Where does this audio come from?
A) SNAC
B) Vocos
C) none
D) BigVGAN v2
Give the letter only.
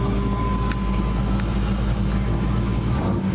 C